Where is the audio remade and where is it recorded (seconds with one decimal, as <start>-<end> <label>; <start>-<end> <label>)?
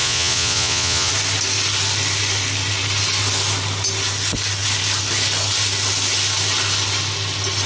0.0-1.1 remade; 1.1-7.7 recorded